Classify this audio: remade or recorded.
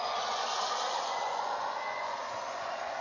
remade